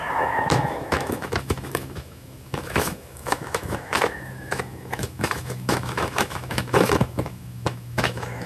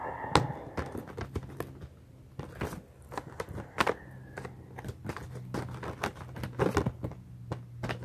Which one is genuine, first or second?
second